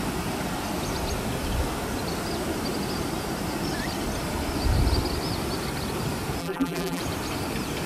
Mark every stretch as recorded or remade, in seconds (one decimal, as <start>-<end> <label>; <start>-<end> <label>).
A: 0.0-6.4 recorded; 6.4-7.0 remade; 7.0-7.9 recorded